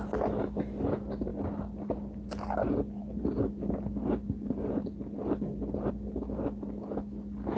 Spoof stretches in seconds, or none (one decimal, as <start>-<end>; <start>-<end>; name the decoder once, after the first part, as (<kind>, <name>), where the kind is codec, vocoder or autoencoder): none